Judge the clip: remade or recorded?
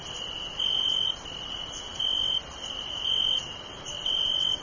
recorded